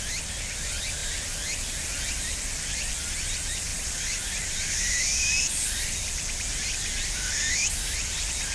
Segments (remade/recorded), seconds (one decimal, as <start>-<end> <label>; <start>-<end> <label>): 0.0-3.7 recorded; 3.7-4.7 remade; 4.7-8.5 recorded